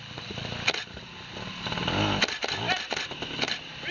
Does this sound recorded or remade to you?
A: recorded